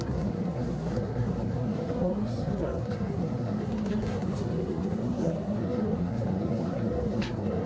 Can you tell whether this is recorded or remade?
remade